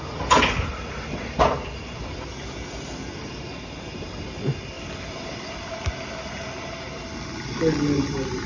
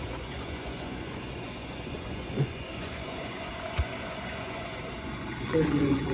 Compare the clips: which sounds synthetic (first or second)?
second